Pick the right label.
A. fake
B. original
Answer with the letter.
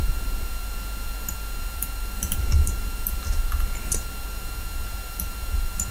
A